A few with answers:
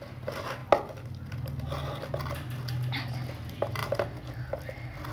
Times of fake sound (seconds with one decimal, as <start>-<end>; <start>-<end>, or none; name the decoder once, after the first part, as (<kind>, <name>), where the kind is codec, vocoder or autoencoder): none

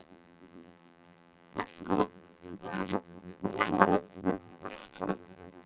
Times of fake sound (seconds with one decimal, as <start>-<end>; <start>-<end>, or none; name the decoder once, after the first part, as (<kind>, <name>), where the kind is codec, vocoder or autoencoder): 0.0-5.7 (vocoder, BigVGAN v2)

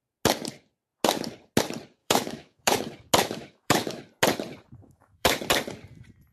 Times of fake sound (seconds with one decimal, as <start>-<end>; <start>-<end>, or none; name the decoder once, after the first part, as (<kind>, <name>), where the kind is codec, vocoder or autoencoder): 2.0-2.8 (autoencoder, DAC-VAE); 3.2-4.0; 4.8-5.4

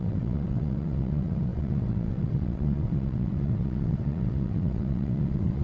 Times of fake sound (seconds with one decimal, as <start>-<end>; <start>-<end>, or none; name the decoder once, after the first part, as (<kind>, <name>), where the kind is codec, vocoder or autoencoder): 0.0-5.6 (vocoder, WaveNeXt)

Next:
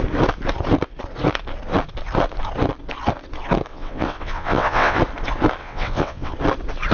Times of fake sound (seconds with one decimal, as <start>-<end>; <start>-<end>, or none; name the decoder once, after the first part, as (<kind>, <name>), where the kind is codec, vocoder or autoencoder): 3.7-5.0 (vocoder, WaveNeXt); 5.6-6.3

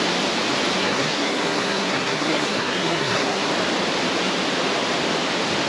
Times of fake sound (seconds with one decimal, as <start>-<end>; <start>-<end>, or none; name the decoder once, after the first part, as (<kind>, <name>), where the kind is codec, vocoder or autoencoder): 0.8-3.5 (codec, SNAC)